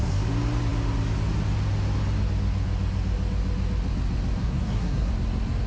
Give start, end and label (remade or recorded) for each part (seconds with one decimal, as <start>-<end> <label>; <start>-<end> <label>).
0.0-4.4 recorded; 4.4-5.1 remade; 5.1-5.7 recorded